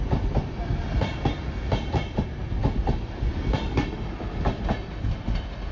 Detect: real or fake real